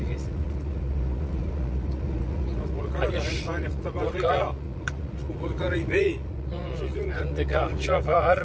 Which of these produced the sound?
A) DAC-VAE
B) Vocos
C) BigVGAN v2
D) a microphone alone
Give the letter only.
B